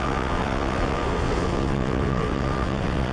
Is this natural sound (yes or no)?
no